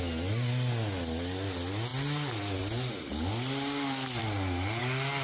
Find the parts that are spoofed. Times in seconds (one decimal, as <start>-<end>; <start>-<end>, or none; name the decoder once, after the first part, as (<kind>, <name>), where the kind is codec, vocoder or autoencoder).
none